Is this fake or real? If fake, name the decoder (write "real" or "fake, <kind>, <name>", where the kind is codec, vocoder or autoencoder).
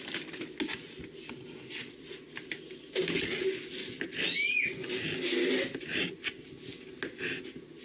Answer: real